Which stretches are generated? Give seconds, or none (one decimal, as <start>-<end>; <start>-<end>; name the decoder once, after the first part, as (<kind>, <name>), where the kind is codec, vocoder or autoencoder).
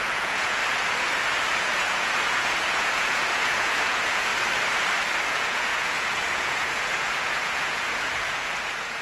0.0-0.6 (vocoder, Vocos); 1.6-4.3; 5.3-9.0